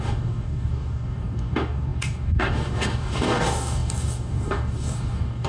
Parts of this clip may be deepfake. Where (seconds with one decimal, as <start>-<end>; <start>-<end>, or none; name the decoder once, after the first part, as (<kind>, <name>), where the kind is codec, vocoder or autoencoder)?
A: 0.0-5.5 (codec, DAC)